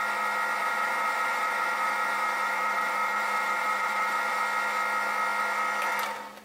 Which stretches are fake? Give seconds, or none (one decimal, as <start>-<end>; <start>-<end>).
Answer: 0.6-4.4